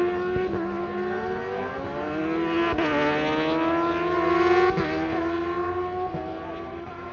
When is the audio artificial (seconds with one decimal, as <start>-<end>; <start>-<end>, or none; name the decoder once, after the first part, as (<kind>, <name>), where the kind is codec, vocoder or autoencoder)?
none